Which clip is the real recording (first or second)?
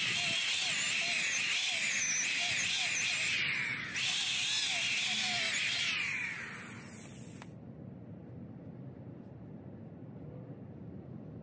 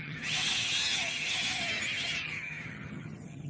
first